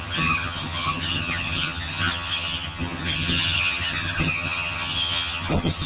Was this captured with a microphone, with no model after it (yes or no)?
no